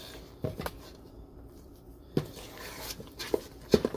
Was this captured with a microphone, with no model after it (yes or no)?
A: no